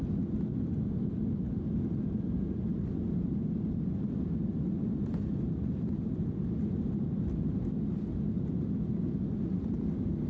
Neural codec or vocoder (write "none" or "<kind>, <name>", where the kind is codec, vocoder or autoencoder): none